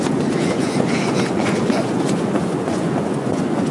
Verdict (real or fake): fake